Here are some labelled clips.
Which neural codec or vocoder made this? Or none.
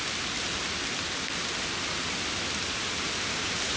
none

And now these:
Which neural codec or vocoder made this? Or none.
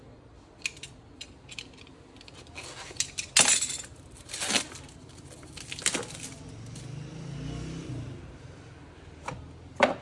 none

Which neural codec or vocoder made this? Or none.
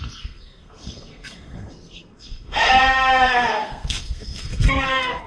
codec, SNAC